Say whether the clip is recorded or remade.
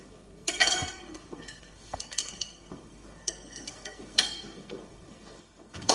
remade